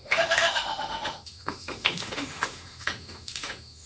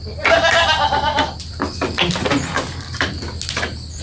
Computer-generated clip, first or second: first